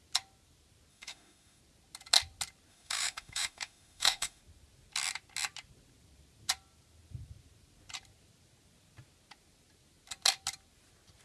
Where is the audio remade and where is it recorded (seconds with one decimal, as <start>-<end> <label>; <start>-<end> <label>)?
0.0-0.9 recorded; 0.9-1.6 remade; 1.6-2.7 recorded; 2.7-4.4 remade; 4.4-11.2 recorded